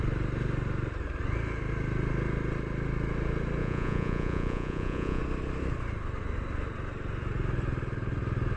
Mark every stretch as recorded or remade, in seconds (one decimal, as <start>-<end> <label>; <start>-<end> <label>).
0.0-3.6 recorded; 3.6-5.2 remade; 5.2-8.6 recorded